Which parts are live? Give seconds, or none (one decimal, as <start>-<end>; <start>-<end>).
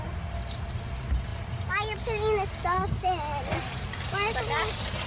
0.0-5.1